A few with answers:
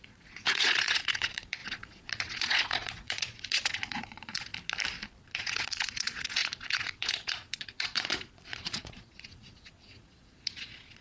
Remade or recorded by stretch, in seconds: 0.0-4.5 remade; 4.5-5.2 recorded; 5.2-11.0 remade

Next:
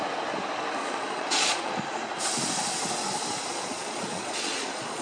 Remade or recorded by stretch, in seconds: 0.0-0.8 recorded; 0.8-1.7 remade; 1.7-3.5 recorded; 3.5-5.0 remade

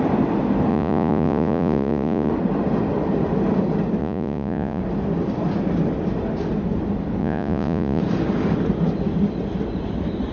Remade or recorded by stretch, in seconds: 0.0-0.7 recorded; 0.7-2.3 remade; 2.3-4.0 recorded; 4.0-4.8 remade; 4.8-7.2 recorded; 7.2-8.0 remade; 8.0-10.3 recorded

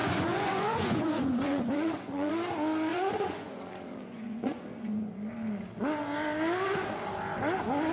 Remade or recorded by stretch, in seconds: 0.0-2.3 remade; 2.3-2.9 recorded; 2.9-5.1 remade; 5.1-7.9 recorded

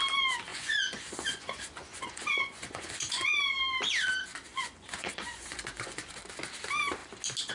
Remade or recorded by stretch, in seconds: 0.0-0.5 recorded; 0.5-3.4 remade; 3.4-4.5 recorded; 4.5-6.2 remade; 6.2-7.5 recorded

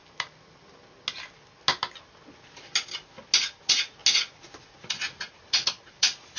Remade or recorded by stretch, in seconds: 0.0-3.6 recorded; 3.6-4.0 remade; 4.0-4.6 recorded; 4.6-6.4 remade

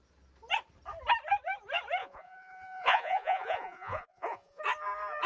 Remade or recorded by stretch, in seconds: 0.0-2.0 recorded; 2.0-4.6 remade; 4.6-5.3 recorded